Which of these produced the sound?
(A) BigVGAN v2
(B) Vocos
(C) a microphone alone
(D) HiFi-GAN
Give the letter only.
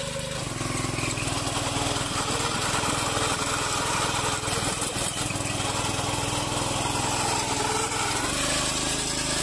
C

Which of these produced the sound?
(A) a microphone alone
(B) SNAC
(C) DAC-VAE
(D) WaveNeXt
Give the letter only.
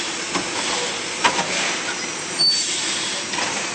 A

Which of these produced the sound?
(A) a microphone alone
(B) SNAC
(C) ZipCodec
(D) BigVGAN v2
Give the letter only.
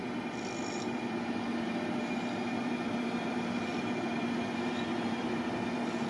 D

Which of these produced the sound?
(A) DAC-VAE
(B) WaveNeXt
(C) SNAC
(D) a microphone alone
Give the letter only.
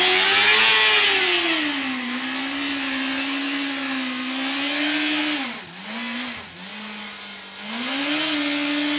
D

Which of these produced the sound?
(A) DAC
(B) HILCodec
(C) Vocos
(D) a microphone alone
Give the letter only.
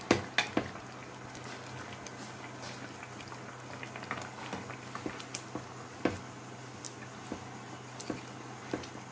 D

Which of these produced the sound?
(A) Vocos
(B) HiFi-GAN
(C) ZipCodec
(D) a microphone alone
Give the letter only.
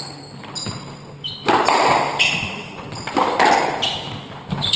D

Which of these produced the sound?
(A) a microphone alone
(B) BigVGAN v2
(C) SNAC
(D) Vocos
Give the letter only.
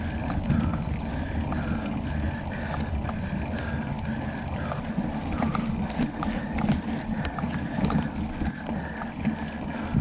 A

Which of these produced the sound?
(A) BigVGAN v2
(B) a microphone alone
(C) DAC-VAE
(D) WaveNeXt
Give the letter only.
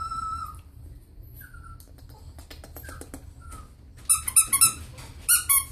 B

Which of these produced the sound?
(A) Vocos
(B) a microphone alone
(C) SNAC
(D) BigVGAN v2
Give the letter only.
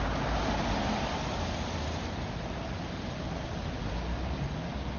B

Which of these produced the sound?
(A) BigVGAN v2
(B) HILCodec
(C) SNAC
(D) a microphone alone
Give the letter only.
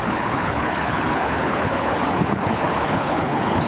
B